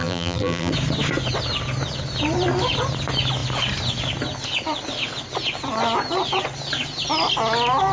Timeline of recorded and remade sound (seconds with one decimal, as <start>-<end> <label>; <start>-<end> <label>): 0.0-0.7 remade; 0.7-7.9 recorded